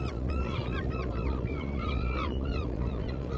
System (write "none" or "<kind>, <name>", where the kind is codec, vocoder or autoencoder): vocoder, Vocos